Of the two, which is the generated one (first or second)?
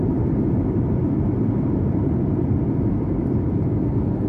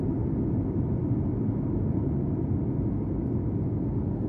first